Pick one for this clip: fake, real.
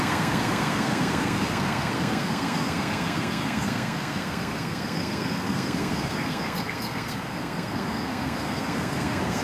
fake